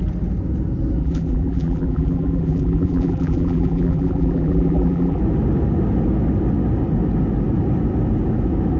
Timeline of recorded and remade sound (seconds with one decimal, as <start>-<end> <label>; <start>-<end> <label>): 0.0-1.0 recorded; 1.0-5.2 remade; 5.2-8.8 recorded